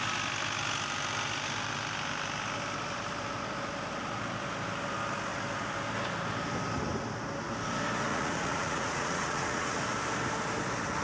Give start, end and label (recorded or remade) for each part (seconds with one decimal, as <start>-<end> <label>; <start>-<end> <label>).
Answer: 0.0-8.1 recorded; 8.1-9.8 remade; 9.8-11.0 recorded